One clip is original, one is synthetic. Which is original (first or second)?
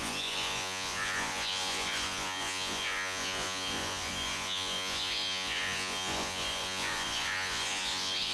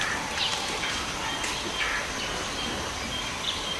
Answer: second